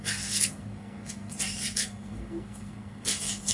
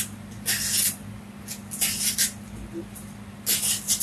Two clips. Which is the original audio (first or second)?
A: second